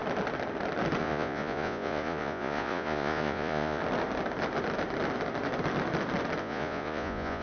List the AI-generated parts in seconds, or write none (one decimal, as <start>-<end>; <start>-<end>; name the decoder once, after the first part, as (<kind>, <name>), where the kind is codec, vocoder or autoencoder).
1.0-3.8 (vocoder, Vocos); 6.4-7.4